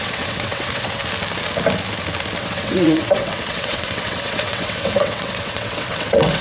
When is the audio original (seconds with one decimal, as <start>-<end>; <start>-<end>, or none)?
1.0-2.4